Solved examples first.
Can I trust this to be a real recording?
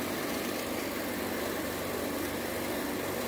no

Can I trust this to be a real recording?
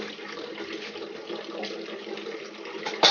no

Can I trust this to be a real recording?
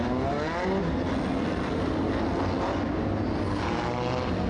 yes